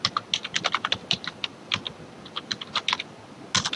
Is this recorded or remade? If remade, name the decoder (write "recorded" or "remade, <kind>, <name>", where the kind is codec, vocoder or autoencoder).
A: recorded